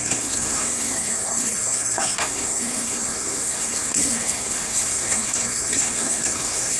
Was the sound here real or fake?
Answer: fake